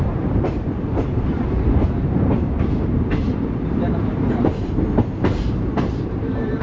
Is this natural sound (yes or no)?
no